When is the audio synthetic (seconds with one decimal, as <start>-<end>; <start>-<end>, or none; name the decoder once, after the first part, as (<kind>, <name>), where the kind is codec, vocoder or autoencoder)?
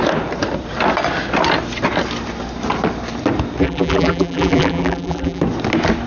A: 3.6-5.4 (vocoder, BigVGAN v2)